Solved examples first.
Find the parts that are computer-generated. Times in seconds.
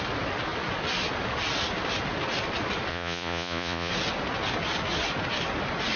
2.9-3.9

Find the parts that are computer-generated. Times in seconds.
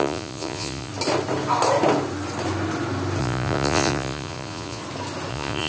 0.0-0.9; 3.2-4.8; 5.3-5.7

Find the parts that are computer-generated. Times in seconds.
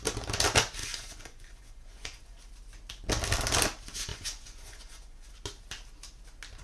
0.8-2.5; 4.1-5.3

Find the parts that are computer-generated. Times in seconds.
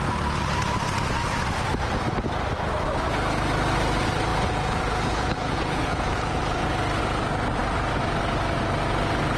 4.3-6.4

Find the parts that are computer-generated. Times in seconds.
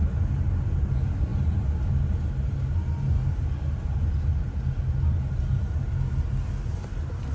none